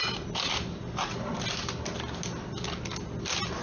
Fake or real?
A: real